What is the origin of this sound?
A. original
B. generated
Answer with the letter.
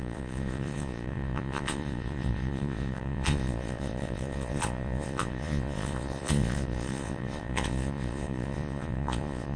B